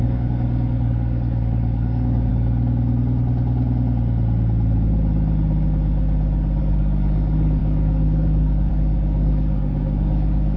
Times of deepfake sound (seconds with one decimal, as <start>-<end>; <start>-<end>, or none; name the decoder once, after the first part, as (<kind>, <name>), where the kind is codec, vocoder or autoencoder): 0.0-2.3 (codec, DAC); 6.6-10.6